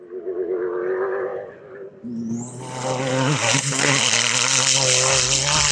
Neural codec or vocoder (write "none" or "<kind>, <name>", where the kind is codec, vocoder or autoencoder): none